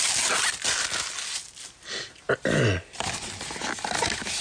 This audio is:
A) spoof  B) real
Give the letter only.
B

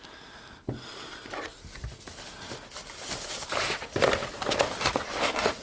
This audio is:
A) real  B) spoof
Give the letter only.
A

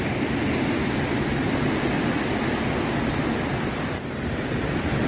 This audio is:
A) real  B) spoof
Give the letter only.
A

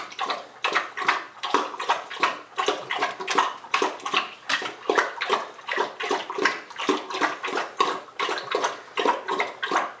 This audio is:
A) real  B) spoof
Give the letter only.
A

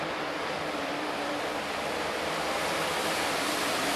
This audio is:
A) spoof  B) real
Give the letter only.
A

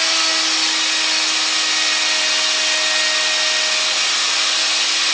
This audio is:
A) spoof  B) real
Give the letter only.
B